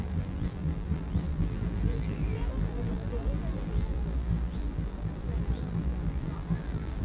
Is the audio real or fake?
fake